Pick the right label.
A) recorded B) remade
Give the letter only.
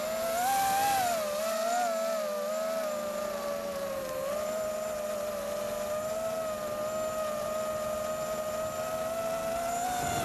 A